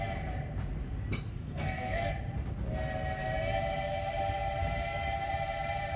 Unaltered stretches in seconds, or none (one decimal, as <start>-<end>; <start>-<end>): 0.0-1.3; 2.1-6.0